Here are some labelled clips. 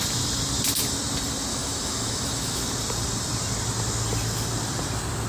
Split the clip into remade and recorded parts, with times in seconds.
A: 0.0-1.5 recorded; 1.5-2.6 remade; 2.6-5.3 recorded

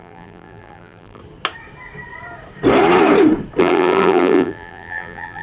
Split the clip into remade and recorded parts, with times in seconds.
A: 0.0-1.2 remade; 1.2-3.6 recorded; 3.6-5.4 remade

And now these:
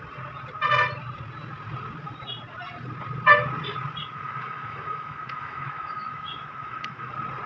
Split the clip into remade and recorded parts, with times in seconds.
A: 0.0-4.0 recorded; 4.0-7.1 remade; 7.1-7.5 recorded

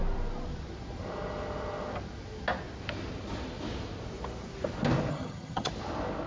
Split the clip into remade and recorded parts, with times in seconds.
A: 0.0-5.1 recorded; 5.1-5.7 remade; 5.7-6.3 recorded